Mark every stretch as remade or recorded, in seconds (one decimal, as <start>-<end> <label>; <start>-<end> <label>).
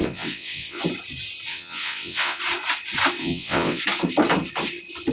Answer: 0.0-0.8 remade; 0.8-1.5 recorded; 1.5-2.4 remade; 2.4-3.2 recorded; 3.2-3.8 remade; 3.8-5.1 recorded